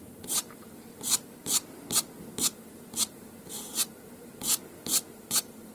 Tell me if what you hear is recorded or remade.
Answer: remade